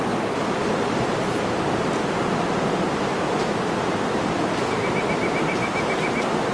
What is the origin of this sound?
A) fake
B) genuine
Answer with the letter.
B